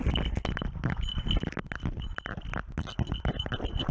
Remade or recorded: recorded